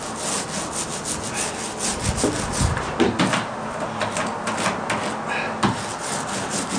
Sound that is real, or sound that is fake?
real